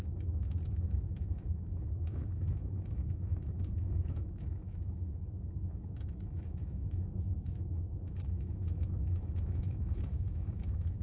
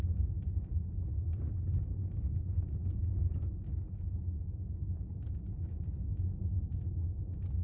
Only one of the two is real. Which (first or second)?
second